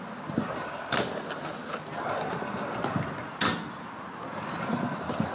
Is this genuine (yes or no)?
yes